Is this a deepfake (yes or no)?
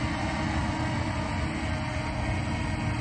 no